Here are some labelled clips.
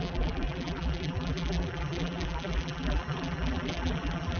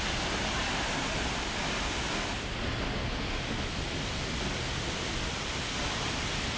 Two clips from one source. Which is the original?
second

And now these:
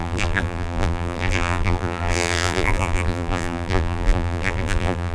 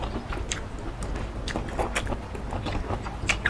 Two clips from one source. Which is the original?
second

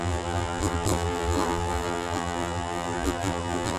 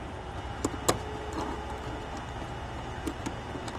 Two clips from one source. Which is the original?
second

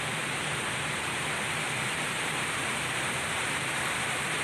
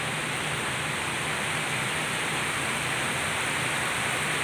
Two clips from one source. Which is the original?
second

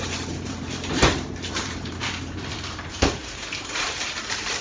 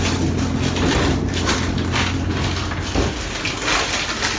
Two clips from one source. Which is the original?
second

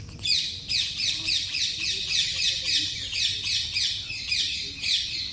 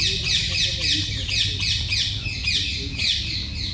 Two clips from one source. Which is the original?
second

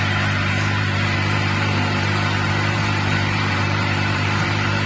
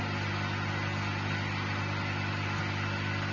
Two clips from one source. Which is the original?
second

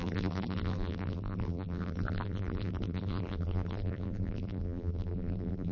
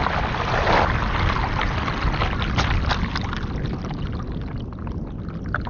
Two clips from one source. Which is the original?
second